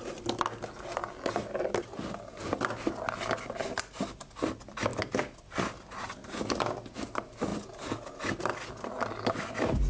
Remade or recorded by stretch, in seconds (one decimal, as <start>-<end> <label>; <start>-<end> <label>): 0.0-9.9 recorded